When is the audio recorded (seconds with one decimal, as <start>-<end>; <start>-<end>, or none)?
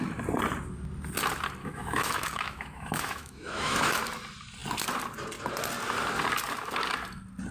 0.0-1.6; 4.0-7.5